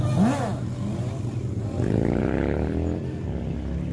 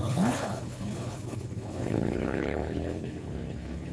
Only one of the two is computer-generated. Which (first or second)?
second